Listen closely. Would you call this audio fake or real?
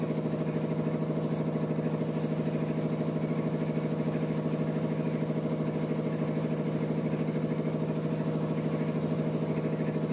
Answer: real